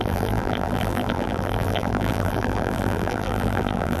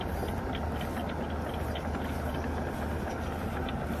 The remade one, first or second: first